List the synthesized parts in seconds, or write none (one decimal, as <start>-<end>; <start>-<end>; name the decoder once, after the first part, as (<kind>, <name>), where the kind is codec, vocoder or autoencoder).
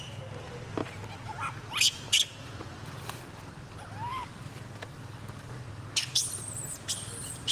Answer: 4.1-6.3 (codec, DAC)